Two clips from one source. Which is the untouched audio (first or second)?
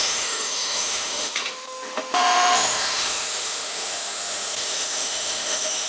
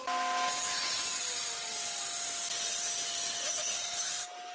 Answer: second